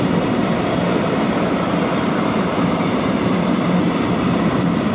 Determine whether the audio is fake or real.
fake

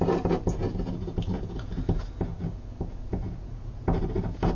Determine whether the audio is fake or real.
fake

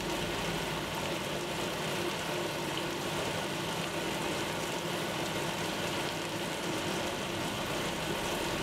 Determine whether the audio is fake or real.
fake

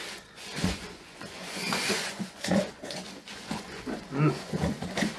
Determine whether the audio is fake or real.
fake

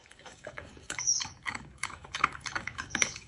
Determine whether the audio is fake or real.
fake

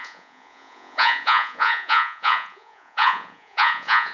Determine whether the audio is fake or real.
fake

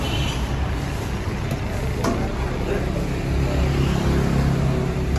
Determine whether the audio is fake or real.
real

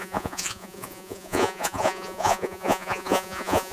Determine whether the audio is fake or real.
fake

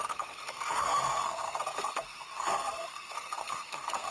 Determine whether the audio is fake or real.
fake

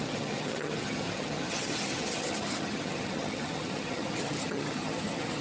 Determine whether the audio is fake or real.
fake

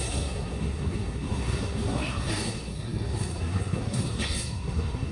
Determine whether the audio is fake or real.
fake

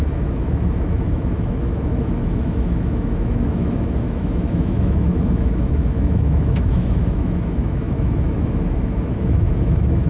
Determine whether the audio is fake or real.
fake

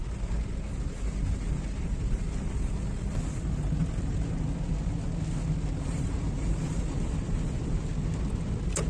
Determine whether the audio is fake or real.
real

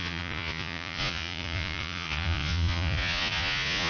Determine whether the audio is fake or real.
fake